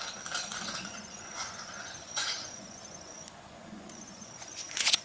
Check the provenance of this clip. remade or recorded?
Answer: remade